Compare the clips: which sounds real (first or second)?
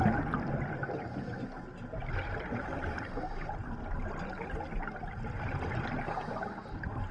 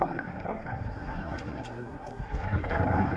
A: first